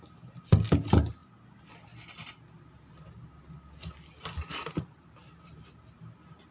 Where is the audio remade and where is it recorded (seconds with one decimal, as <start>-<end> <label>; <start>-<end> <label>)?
0.0-6.5 recorded